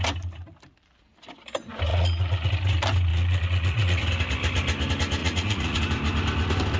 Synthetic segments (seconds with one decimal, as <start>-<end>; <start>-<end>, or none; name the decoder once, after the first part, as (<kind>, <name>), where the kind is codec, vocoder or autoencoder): 1.9-2.5 (vocoder, Vocos); 3.1-4.0; 5.2-5.8